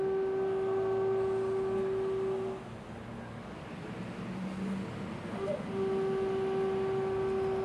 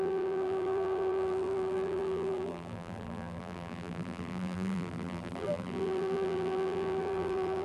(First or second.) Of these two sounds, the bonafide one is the first